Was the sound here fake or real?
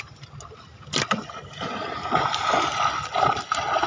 real